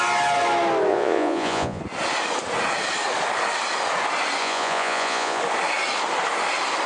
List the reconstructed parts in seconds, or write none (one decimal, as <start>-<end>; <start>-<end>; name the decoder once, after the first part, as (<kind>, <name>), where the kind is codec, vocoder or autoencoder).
0.9-1.8 (vocoder, Vocos); 4.4-5.4